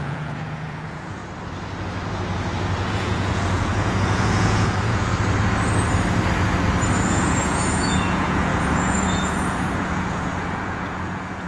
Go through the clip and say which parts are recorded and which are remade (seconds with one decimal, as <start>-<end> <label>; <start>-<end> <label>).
0.0-1.2 remade; 1.2-2.9 recorded; 2.9-5.1 remade; 5.1-7.0 recorded; 7.0-11.5 remade